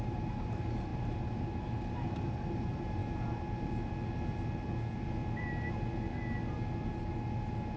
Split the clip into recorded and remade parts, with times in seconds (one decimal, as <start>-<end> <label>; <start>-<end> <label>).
0.0-3.0 remade; 3.0-7.8 recorded